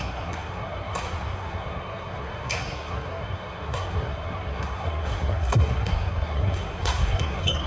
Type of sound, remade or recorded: remade